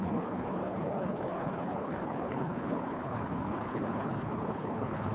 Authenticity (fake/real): fake